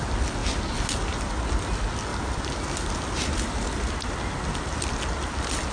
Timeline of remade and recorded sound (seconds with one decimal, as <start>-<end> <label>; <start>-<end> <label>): 0.0-2.1 recorded; 2.1-3.4 remade; 3.4-5.7 recorded